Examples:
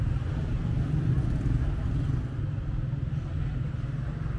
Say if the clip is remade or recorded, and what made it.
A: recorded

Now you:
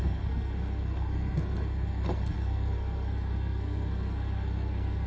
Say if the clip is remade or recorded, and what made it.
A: remade, codec, SNAC